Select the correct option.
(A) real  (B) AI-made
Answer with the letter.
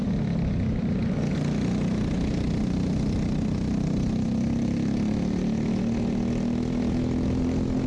A